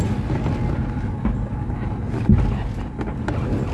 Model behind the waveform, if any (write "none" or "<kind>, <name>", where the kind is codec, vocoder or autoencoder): none